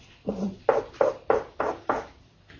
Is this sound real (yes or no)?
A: yes